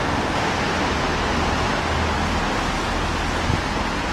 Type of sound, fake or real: real